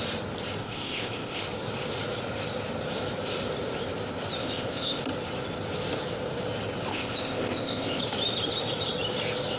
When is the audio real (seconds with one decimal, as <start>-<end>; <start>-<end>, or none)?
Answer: 0.0-0.6; 1.4-4.4; 5.0-6.9; 8.0-9.6